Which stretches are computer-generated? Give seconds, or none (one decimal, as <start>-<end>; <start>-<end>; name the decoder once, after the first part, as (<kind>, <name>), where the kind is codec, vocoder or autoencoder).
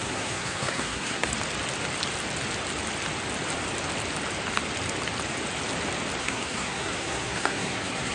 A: 0.0-1.3 (codec, SNAC); 6.2-8.1